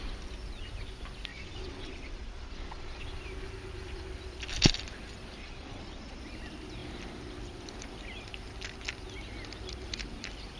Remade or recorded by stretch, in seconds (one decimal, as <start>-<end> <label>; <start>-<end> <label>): 0.0-1.3 recorded; 1.3-3.0 remade; 3.0-5.4 recorded; 5.4-6.2 remade; 6.2-10.6 recorded